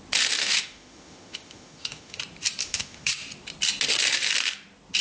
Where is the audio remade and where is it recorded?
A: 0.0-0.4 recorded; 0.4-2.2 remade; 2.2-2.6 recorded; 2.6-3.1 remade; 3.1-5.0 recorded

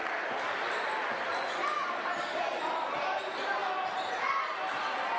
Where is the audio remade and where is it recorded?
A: 0.0-5.2 recorded